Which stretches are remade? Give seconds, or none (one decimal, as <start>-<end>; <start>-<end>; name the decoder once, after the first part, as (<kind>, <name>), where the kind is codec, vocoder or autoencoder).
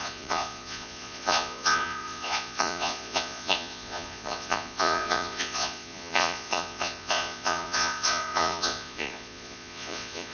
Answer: 0.0-10.3 (vocoder, Vocos)